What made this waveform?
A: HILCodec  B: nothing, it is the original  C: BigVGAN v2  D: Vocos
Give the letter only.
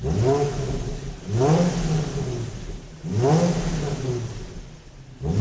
B